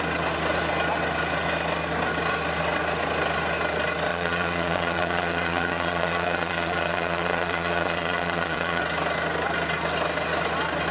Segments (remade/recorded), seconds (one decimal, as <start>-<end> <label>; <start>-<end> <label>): 0.0-4.1 recorded; 4.1-8.8 remade; 8.8-10.9 recorded